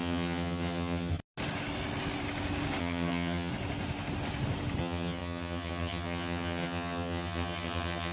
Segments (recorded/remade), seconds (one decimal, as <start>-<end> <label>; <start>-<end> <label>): 0.0-1.2 remade; 1.2-2.8 recorded; 2.8-3.5 remade; 3.5-4.8 recorded; 4.8-8.1 remade